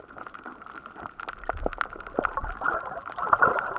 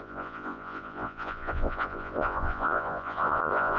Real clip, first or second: first